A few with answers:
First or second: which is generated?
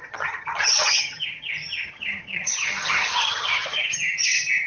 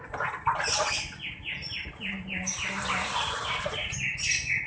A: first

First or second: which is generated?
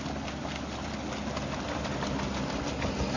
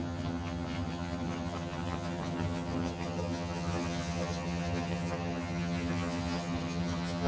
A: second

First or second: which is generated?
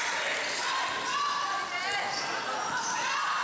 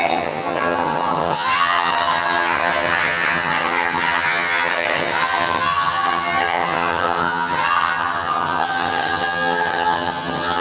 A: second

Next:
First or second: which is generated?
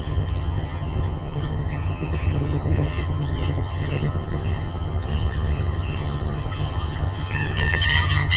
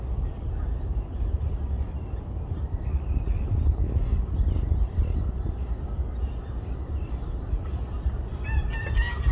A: first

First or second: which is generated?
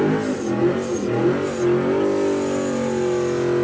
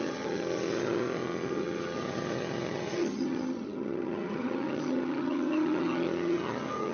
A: second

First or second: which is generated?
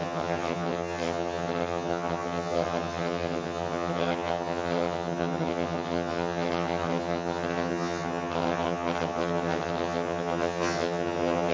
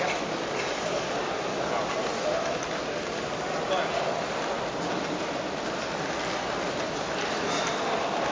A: first